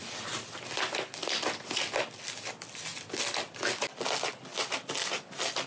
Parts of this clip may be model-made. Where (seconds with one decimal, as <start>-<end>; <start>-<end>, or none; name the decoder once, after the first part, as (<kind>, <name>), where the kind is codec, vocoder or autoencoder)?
none